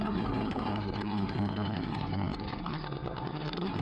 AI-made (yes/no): yes